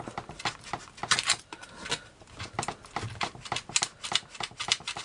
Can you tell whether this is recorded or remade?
recorded